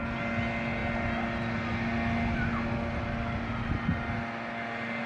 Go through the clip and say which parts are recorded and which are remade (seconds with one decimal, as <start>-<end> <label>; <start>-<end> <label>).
0.0-5.1 recorded